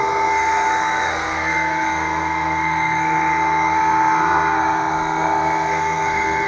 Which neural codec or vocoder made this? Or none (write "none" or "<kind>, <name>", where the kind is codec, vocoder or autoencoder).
codec, SNAC